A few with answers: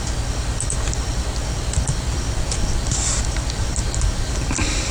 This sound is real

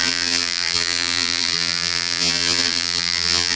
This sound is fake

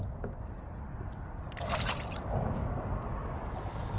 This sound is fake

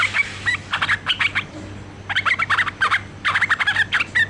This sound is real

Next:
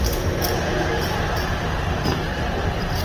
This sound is fake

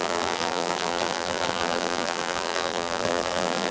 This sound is fake